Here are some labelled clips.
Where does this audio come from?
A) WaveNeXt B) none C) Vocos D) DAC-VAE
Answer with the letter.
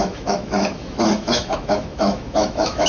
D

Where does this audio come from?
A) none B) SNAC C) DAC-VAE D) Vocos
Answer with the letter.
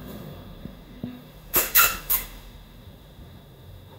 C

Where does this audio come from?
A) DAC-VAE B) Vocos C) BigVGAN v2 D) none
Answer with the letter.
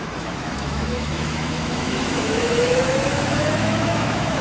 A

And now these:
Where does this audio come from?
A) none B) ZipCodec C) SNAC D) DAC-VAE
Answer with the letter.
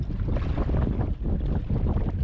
A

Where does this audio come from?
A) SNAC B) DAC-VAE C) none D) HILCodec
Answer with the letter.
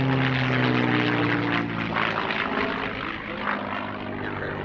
C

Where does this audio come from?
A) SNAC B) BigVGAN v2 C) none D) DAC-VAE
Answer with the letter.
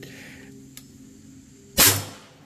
C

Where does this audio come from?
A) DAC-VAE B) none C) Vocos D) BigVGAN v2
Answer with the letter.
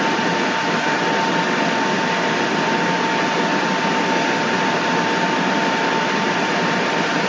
B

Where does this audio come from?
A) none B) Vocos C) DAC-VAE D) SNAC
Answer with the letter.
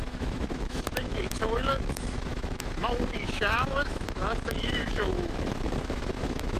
C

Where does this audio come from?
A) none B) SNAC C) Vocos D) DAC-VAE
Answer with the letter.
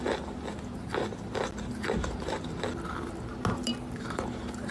A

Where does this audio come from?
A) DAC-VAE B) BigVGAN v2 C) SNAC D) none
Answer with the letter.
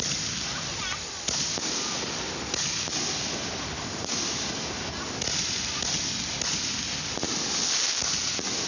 D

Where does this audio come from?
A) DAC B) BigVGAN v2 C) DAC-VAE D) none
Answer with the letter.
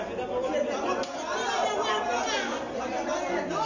D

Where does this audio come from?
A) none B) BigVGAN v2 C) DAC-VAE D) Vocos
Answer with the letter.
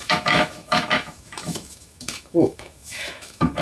C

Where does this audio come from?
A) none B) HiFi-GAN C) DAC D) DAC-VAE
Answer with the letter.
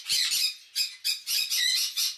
A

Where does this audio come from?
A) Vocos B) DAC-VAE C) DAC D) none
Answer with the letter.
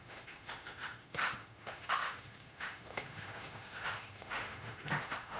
B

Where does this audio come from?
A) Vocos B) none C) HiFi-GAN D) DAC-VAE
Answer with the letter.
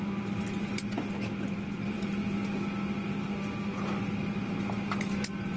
B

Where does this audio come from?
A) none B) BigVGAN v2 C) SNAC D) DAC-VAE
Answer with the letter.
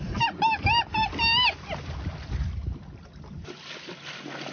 A